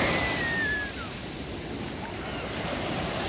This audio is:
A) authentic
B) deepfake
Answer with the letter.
A